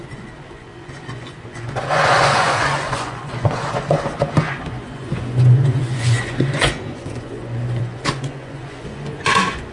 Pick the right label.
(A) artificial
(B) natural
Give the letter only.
A